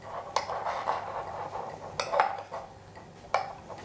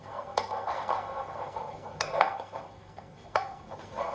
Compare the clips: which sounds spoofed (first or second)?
second